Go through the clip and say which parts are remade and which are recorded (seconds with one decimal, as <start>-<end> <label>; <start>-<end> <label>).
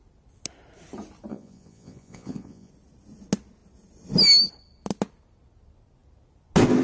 0.0-1.3 recorded; 1.3-2.7 remade; 2.7-6.8 recorded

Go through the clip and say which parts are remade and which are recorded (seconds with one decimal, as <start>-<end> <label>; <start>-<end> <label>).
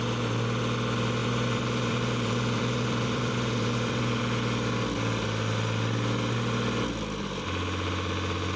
0.0-1.2 recorded; 1.2-4.2 remade; 4.2-8.6 recorded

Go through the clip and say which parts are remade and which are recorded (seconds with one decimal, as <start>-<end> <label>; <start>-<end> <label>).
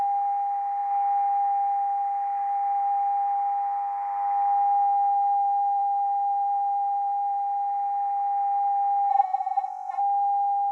0.0-9.1 recorded; 9.1-10.0 remade; 10.0-10.7 recorded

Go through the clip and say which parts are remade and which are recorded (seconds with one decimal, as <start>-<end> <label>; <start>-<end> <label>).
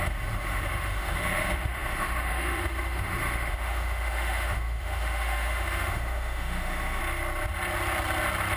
0.0-7.0 remade; 7.0-8.6 recorded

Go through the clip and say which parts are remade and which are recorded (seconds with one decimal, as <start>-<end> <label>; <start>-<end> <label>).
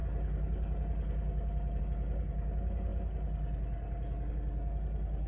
0.0-5.3 recorded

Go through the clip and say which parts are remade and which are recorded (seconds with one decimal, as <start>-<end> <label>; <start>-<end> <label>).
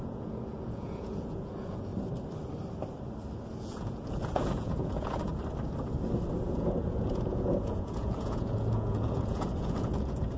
0.0-1.9 remade; 1.9-3.6 recorded; 3.6-5.4 remade; 5.4-6.5 recorded; 6.5-10.4 remade